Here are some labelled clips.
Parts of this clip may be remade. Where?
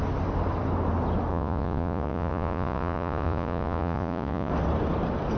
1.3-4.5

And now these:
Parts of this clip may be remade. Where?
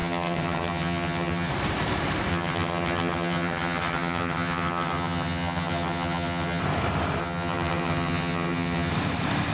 0.0-1.5; 2.3-6.6; 7.2-8.9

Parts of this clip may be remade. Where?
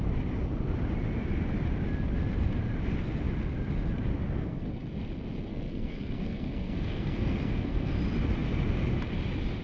4.4-4.9; 5.5-8.0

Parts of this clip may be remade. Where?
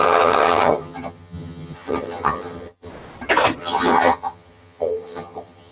0.0-2.9; 3.6-5.7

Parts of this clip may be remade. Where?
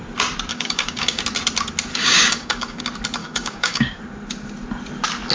0.5-1.2; 1.9-2.8; 3.2-4.0